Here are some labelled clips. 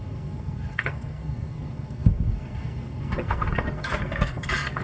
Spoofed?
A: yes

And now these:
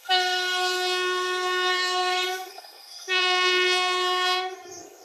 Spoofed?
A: yes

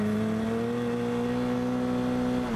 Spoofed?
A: no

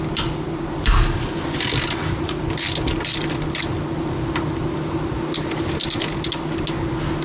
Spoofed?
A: no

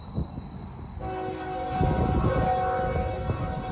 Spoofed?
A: no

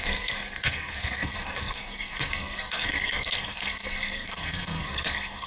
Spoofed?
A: yes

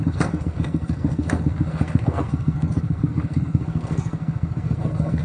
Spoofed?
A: yes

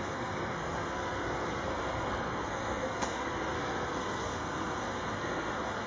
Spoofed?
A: yes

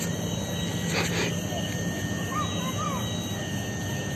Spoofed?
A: no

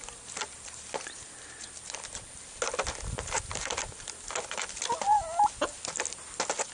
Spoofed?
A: no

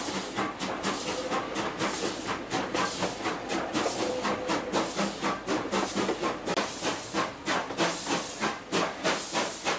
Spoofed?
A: no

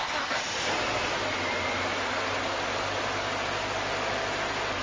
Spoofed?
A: no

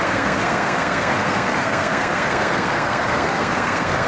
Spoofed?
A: yes